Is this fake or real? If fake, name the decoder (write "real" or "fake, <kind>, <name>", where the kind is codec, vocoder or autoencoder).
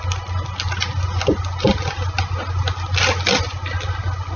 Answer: real